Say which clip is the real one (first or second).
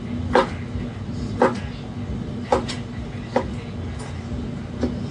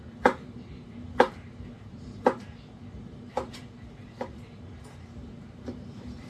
first